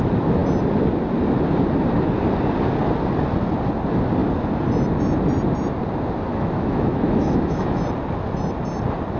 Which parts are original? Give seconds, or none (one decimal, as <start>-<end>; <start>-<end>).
0.0-6.3; 7.8-9.2